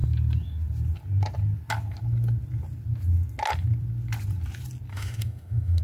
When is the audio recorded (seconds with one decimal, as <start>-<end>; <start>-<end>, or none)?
0.0-4.9